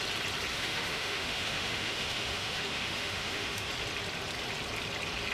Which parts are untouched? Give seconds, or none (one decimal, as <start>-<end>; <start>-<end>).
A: 0.0-0.5; 3.7-5.3